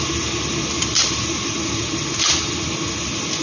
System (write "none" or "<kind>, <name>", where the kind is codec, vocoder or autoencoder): none